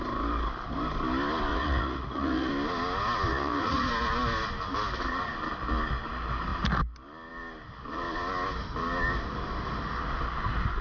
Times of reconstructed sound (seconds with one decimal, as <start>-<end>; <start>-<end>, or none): 1.5-2.5; 3.3-3.9